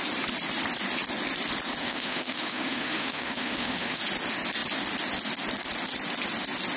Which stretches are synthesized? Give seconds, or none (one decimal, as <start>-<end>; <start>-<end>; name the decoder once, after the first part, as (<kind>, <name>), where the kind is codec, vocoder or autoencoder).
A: 1.8-4.0 (autoencoder, DAC-VAE)